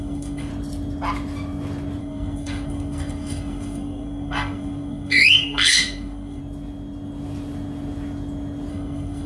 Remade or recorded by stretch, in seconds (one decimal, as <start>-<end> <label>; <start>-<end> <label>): 0.0-0.5 remade; 0.5-2.0 recorded; 2.0-6.4 remade; 6.4-8.7 recorded; 8.7-9.3 remade